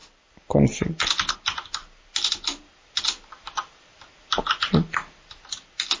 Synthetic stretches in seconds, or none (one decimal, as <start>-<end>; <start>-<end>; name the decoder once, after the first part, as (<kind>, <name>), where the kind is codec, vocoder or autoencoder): none